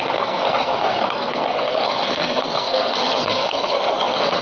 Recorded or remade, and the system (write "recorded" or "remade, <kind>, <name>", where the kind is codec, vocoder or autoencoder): remade, codec, SNAC